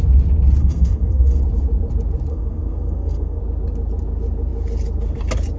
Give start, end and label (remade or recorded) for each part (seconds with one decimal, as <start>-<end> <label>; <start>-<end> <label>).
0.0-0.6 recorded; 0.6-1.4 remade; 1.4-2.3 recorded; 2.3-3.4 remade; 3.4-5.6 recorded